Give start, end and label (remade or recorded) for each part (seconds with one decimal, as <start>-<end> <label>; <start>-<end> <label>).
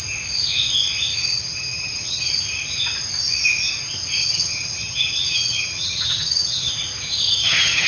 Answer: 0.0-1.2 recorded; 1.2-2.3 remade; 2.3-4.2 recorded; 4.2-6.7 remade; 6.7-7.4 recorded; 7.4-7.9 remade